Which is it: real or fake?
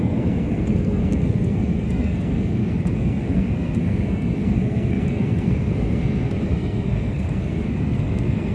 fake